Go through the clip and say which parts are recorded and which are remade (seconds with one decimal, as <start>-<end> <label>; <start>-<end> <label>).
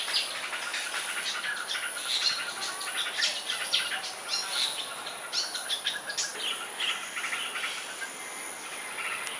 0.0-9.4 recorded